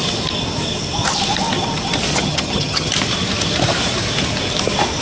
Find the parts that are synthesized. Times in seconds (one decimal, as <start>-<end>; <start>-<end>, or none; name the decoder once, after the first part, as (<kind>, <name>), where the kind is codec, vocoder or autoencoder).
2.1-2.9 (vocoder, HiFi-GAN)